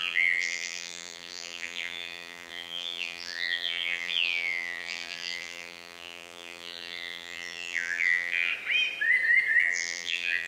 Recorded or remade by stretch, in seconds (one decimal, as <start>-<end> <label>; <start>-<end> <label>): 0.0-8.5 remade; 8.5-9.6 recorded; 9.6-10.5 remade